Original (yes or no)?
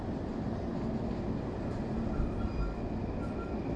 yes